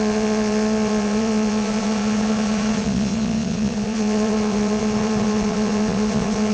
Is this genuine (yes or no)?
no